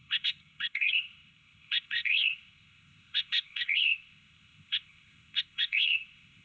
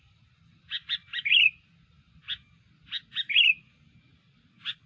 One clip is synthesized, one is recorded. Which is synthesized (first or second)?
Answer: first